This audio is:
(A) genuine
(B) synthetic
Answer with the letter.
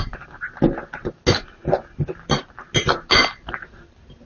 A